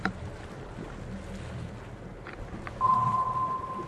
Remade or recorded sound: recorded